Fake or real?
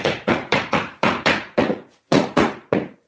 fake